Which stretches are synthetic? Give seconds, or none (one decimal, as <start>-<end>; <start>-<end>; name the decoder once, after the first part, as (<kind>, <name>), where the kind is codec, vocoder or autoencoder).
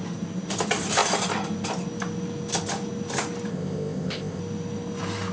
3.5-4.4 (codec, ZipCodec)